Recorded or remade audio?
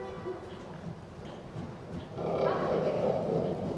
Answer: recorded